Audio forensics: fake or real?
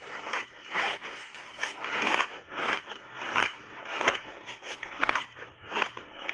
fake